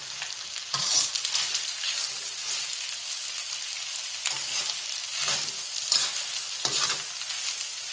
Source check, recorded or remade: recorded